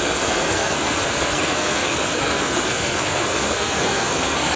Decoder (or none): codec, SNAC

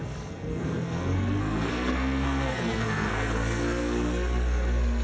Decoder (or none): codec, SNAC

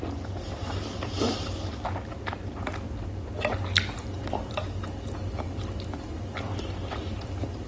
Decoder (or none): none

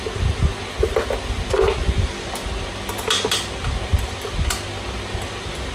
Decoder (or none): none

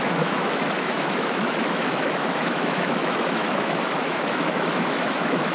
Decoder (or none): autoencoder, DAC-VAE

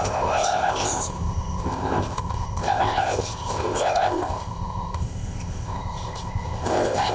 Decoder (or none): codec, ZipCodec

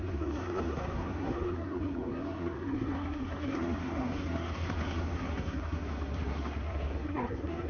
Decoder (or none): codec, SNAC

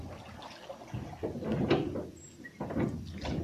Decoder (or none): none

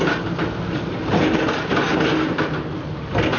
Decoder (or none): none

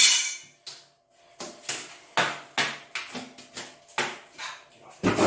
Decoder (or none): none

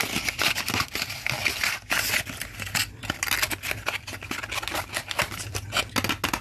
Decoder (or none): none